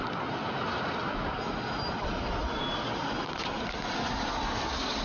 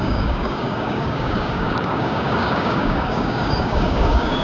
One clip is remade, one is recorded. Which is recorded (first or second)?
first